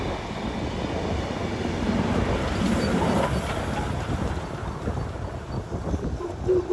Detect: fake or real real